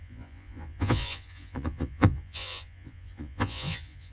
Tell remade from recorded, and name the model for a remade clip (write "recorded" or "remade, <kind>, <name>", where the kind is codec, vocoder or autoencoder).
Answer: remade, vocoder, Vocos